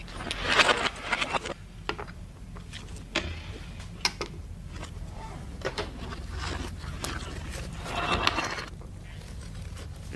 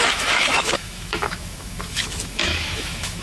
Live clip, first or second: first